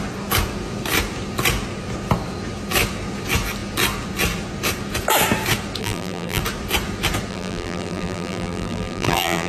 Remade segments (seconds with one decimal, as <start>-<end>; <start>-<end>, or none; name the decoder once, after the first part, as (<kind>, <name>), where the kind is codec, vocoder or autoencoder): 5.8-6.4 (vocoder, BigVGAN v2); 7.3-9.5